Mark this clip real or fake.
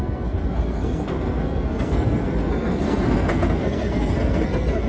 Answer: fake